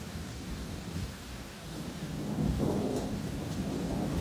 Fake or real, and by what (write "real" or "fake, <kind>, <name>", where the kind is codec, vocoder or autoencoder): fake, codec, DAC